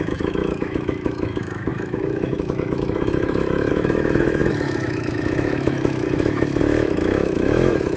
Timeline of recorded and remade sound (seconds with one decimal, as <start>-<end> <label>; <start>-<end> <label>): 0.0-8.0 remade